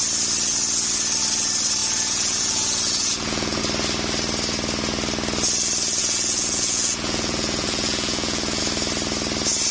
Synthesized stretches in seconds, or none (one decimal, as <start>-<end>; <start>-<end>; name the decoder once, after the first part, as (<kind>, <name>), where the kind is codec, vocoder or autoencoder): 1.8-3.6 (vocoder, Vocos); 6.0-8.6